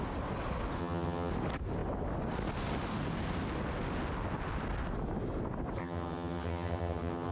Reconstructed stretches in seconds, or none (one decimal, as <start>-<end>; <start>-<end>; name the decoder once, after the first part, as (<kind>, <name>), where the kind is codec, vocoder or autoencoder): 0.8-1.3 (vocoder, HiFi-GAN); 5.8-7.3